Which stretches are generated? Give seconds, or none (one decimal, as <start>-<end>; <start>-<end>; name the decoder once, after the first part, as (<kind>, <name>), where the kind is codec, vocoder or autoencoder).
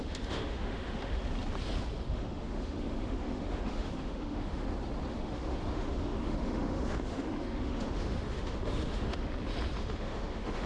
0.0-1.2 (autoencoder, DAC-VAE); 2.0-4.6; 5.1-9.3; 9.8-10.7